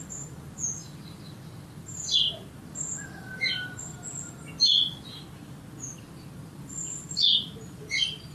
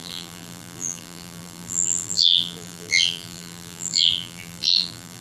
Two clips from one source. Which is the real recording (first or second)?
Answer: first